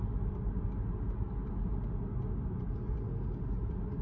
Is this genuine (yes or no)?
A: yes